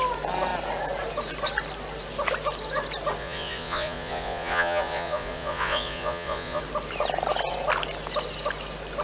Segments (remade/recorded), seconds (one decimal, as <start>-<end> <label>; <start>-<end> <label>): 0.0-3.2 recorded; 3.2-6.6 remade; 6.6-9.0 recorded